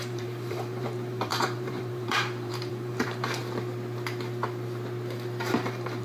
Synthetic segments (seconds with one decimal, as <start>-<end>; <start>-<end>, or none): 0.0-3.4; 5.5-6.0